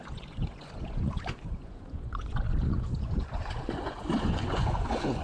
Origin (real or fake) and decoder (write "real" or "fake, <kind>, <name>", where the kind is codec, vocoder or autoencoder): fake, vocoder, Vocos